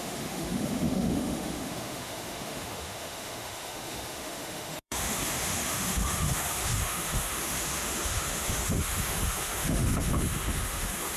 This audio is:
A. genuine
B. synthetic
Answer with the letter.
B